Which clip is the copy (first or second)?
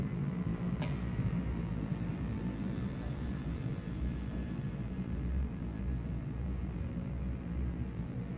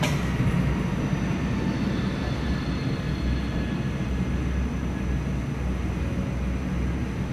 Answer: first